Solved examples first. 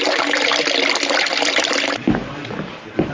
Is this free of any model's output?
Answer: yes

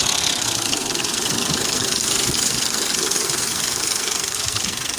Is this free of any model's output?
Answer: no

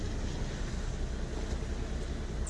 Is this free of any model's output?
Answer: yes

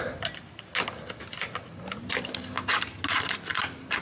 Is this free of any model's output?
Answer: yes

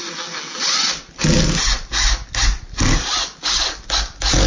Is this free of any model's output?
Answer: yes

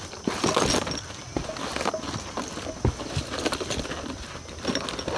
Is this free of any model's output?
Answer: yes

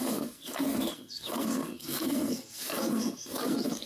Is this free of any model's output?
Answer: no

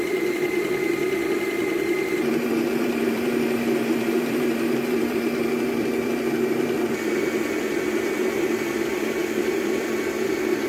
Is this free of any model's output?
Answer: no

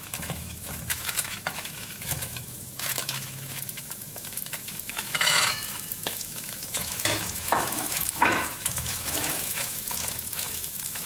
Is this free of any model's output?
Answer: no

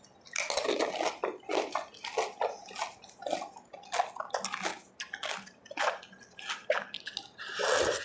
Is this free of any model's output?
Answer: yes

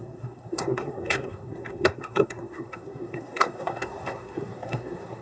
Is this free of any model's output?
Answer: no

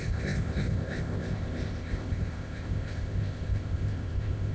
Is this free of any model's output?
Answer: no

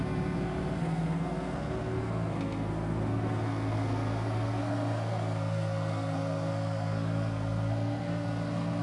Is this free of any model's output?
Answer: no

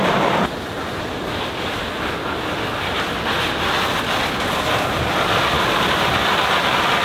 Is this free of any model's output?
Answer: yes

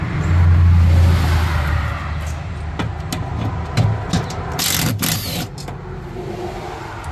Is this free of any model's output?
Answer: yes